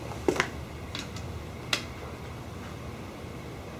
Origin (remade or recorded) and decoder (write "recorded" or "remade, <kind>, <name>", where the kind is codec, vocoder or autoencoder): recorded